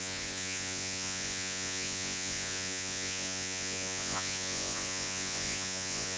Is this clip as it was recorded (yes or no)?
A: no